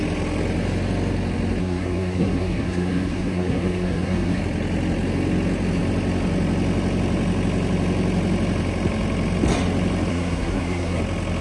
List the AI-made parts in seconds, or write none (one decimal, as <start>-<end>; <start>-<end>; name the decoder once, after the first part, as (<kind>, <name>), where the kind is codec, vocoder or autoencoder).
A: 1.6-4.4 (codec, SNAC); 10.1-11.0